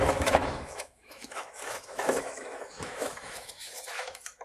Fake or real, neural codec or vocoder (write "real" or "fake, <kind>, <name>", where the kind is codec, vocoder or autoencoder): fake, autoencoder, DAC-VAE